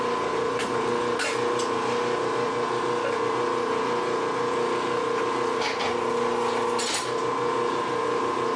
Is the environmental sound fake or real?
real